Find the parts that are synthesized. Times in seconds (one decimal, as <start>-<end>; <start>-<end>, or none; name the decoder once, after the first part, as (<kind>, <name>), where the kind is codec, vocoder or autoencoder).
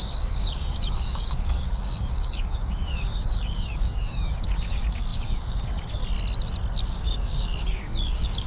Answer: 0.0-6.0 (codec, DAC); 6.9-8.5